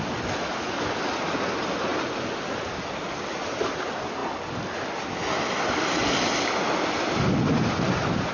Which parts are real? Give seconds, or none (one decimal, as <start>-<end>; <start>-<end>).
0.0-8.3